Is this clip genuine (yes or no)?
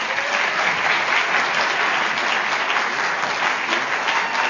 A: yes